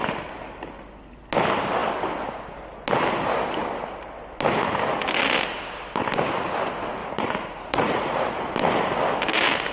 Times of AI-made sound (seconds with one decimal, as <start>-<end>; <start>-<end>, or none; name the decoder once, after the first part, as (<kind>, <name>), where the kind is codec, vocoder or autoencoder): 7.0-8.4 (vocoder, Vocos)